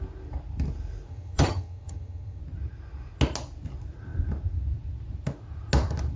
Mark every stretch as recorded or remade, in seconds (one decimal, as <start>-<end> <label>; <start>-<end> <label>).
0.0-1.1 recorded; 1.1-2.4 remade; 2.4-6.2 recorded